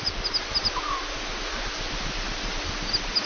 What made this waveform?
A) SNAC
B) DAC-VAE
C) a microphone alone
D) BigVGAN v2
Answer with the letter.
C